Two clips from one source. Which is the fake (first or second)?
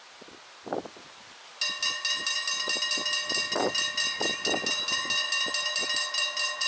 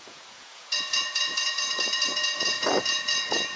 second